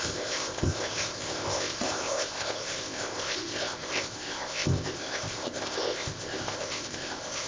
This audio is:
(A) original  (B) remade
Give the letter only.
B